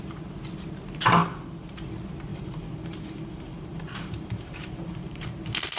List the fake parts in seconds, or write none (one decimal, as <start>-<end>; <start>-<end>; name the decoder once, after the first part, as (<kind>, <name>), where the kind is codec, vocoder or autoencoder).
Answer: 1.2-1.8 (vocoder, BigVGAN v2); 2.3-5.3